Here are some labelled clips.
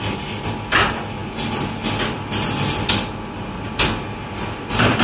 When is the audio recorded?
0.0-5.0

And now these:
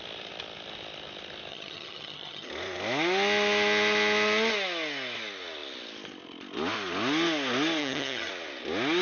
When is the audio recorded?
0.0-1.5; 2.5-7.8; 8.3-9.0